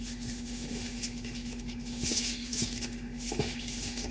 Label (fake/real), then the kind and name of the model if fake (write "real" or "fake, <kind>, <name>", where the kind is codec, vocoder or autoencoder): fake, autoencoder, DAC-VAE